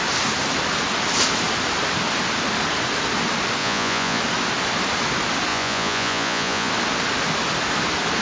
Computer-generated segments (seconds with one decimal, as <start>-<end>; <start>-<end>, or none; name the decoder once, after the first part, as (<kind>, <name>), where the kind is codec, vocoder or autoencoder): 3.6-4.2 (vocoder, Vocos); 5.5-6.7